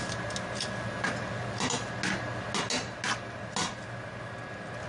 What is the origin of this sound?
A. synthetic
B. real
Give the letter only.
B